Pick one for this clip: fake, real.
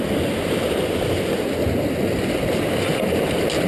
real